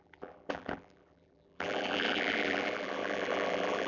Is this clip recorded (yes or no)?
no